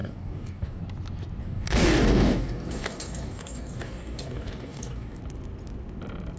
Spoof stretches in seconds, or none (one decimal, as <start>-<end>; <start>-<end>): 0.0-0.8; 1.4-5.2

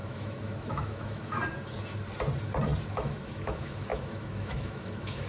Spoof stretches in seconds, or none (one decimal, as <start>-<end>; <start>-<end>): 0.0-1.4; 2.9-5.3

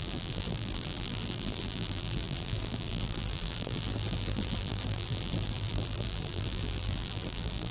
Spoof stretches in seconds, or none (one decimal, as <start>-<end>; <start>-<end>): 0.0-7.7